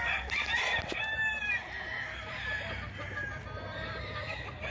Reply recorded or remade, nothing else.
recorded